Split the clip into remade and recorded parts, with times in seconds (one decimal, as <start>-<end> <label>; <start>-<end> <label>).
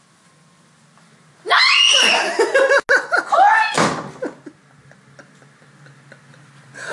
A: 0.0-6.9 recorded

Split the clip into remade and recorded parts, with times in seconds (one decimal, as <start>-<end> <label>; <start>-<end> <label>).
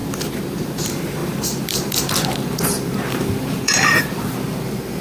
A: 0.0-0.6 recorded; 0.6-5.0 remade